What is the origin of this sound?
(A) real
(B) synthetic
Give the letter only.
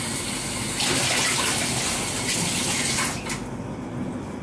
A